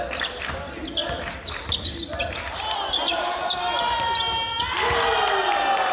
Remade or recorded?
recorded